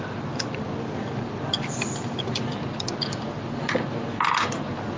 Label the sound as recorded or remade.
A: recorded